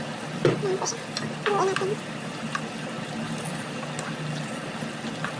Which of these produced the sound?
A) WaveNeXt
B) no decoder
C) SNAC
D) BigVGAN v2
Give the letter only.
B